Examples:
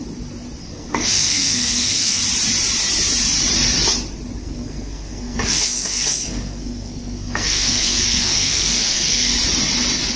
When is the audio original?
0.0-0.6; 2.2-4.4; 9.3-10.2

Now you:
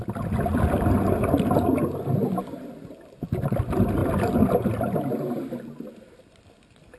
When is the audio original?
0.0-7.0

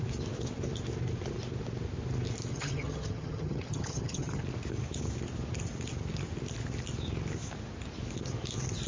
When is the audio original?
0.0-2.5; 4.4-8.9

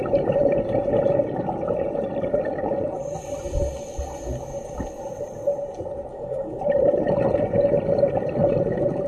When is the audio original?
0.0-6.1; 6.6-9.1

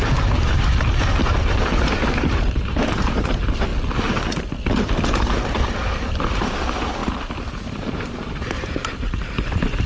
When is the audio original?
3.7-6.2; 7.0-7.5

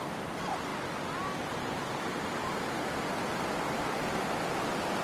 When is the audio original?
0.0-5.0